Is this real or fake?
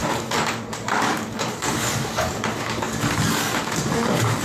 fake